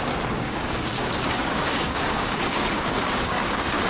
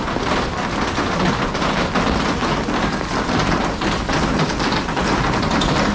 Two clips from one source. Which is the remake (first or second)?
first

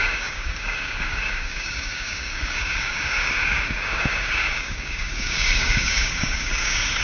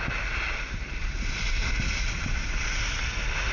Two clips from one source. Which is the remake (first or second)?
first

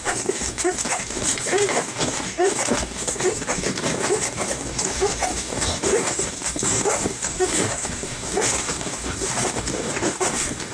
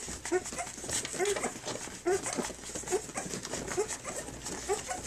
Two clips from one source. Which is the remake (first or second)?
first